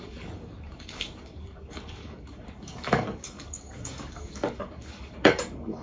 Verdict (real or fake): fake